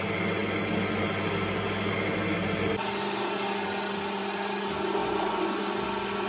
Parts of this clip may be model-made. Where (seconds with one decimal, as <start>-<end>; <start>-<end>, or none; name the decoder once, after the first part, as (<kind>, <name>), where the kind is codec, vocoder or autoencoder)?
5.0-5.6 (vocoder, Vocos)